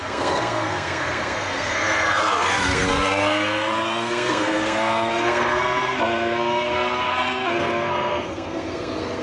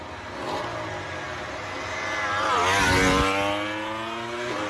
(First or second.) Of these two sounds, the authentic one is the second